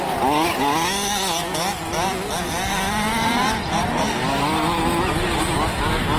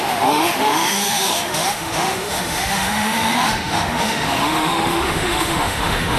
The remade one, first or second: second